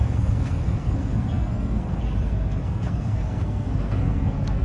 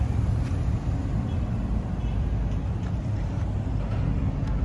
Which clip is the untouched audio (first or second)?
second